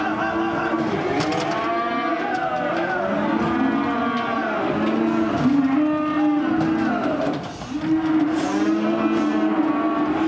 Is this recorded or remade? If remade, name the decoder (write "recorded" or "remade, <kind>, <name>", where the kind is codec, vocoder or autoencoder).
recorded